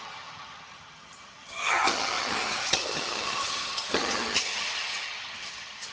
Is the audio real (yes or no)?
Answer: no